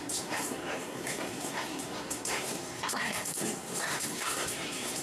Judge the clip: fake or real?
fake